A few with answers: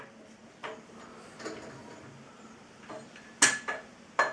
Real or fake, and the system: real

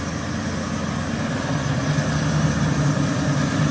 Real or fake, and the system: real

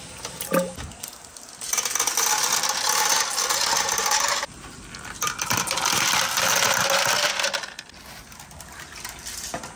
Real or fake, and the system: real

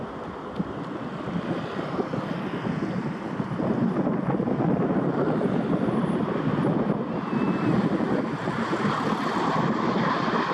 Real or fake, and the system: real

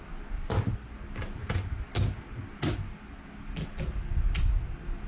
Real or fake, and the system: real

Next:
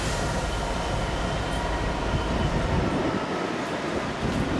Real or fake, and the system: real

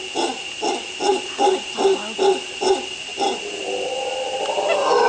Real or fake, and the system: real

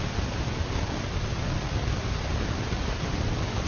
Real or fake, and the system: real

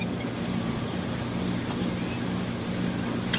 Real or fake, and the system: fake, vocoder, BigVGAN v2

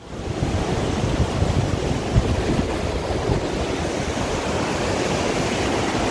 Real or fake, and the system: real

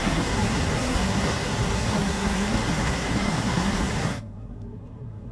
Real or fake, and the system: fake, codec, SNAC